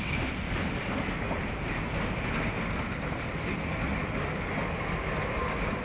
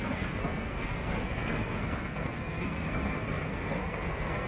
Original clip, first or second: first